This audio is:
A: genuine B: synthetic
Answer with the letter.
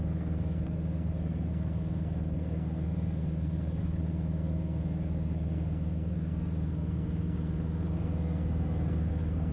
B